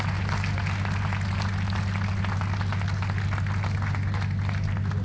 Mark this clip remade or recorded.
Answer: recorded